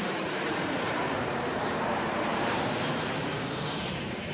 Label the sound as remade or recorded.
remade